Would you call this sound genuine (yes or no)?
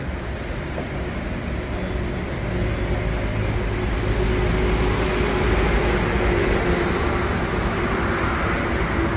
yes